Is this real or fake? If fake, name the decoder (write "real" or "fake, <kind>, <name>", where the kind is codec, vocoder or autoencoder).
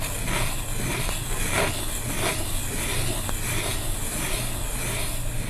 real